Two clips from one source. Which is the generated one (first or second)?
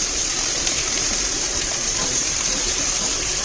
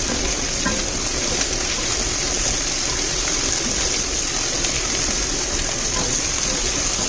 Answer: first